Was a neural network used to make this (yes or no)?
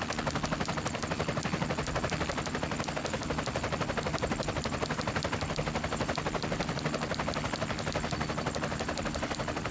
no